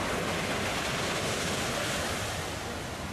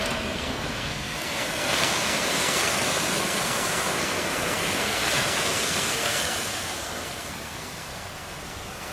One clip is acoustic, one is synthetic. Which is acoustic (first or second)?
first